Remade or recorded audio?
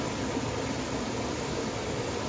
recorded